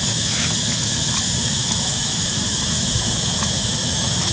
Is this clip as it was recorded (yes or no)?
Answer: no